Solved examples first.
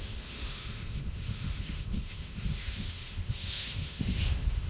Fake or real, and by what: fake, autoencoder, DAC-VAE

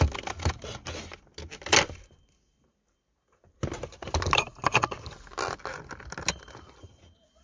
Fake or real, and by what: real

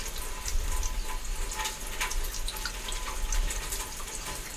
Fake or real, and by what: real